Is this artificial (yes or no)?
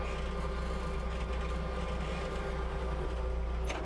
no